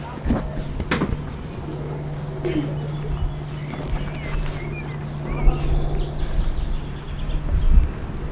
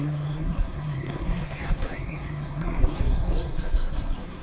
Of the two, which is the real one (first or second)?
first